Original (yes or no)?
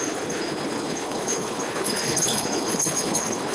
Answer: no